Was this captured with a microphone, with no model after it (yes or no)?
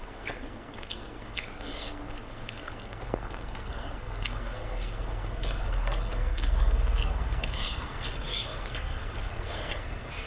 no